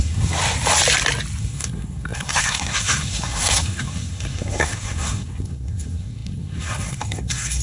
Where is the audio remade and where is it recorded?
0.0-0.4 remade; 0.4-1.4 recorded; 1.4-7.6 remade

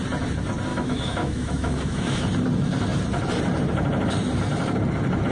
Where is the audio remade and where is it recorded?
0.0-0.7 recorded; 0.7-2.2 remade; 2.2-5.3 recorded